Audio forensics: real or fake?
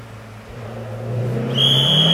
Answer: real